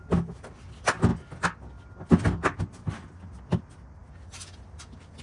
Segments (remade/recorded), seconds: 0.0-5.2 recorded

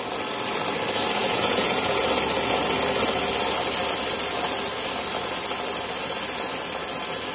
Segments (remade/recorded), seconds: 0.0-1.2 recorded; 1.2-2.0 remade; 2.0-7.3 recorded

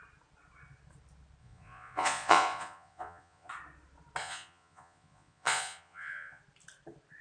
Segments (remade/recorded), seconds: 0.0-1.4 recorded; 1.4-3.5 remade; 3.5-4.2 recorded; 4.2-6.4 remade; 6.4-7.2 recorded

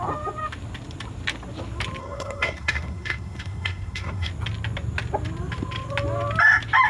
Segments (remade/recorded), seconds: 0.0-2.0 recorded; 2.0-4.3 remade; 4.3-6.9 recorded

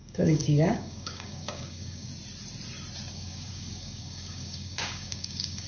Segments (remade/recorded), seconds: 0.0-2.1 remade; 2.1-3.1 recorded; 3.1-5.7 remade